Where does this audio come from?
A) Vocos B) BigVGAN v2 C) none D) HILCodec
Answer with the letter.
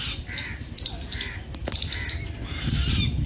C